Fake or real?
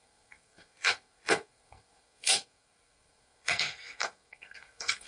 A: fake